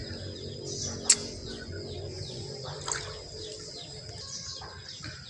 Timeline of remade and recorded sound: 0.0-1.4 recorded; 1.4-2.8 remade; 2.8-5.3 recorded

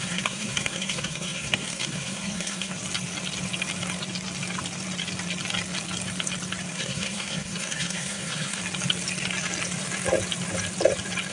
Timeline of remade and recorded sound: 0.0-2.7 remade; 2.7-6.7 recorded; 6.7-8.6 remade; 8.6-11.3 recorded

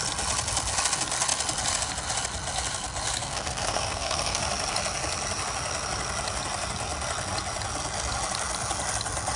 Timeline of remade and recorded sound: 0.0-3.2 recorded; 3.2-4.4 remade; 4.4-9.4 recorded